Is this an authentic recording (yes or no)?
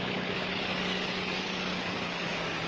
no